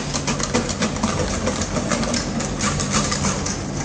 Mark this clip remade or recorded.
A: recorded